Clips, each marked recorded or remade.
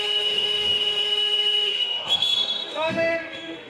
remade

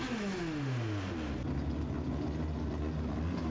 recorded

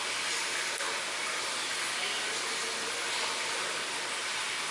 recorded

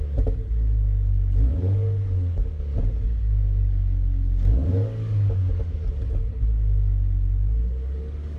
remade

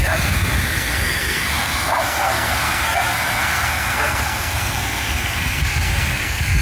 remade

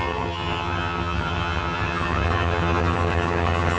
remade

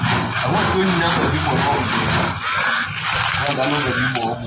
recorded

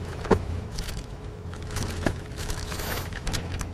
remade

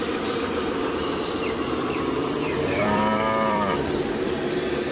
remade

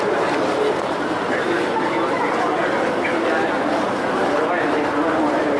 recorded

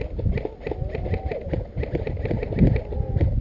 recorded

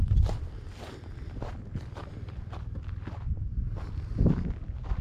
recorded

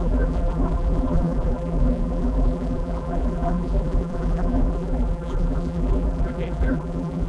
remade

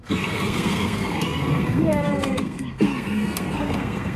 remade